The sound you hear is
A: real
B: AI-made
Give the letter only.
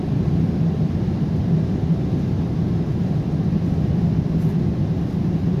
A